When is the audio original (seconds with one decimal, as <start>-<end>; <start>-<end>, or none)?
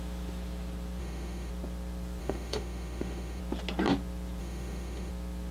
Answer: 0.0-1.0; 1.5-2.2; 3.4-4.4; 5.1-5.5